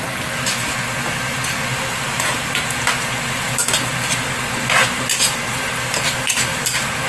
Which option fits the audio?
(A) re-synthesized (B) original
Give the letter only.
B